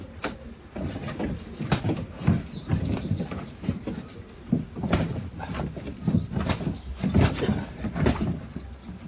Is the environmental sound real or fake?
real